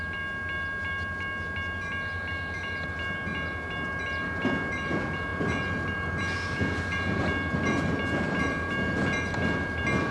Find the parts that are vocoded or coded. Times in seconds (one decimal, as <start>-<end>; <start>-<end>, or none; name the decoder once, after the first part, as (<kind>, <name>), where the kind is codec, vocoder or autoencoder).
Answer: none